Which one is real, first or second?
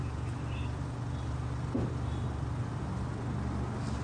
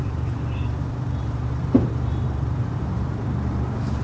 first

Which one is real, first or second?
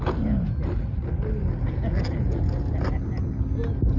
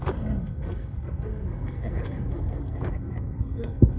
first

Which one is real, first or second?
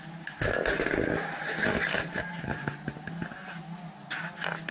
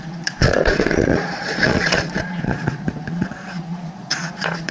first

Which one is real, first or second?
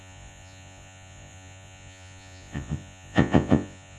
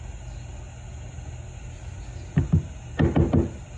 second